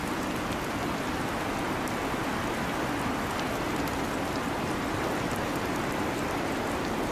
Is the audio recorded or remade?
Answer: recorded